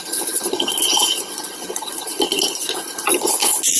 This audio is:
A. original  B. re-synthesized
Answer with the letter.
B